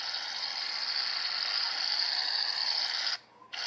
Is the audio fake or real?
real